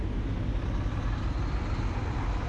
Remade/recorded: recorded